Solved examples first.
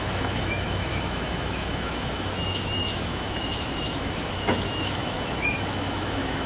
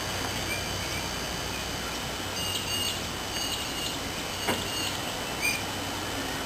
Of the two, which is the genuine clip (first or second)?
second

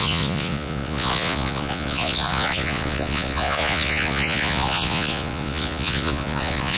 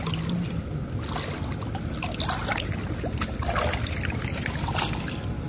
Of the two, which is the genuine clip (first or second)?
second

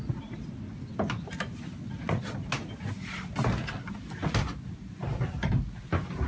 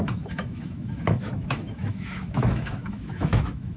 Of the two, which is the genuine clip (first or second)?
first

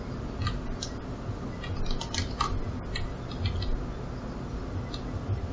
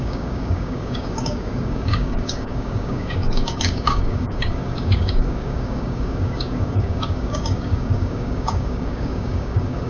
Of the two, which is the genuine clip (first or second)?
first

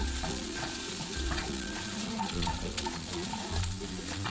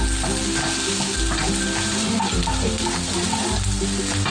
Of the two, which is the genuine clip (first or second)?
second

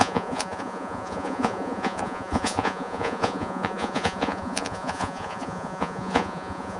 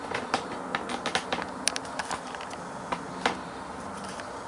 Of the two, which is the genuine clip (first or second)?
second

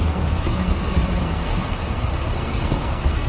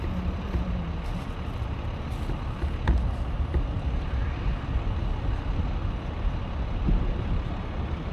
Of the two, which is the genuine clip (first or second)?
second